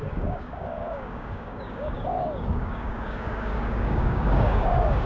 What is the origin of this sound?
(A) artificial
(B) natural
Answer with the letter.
A